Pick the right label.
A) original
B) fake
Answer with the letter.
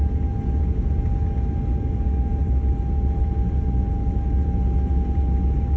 A